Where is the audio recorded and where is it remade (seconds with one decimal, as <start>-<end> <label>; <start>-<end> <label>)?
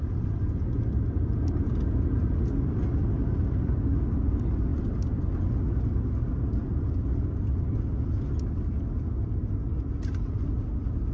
0.0-11.1 recorded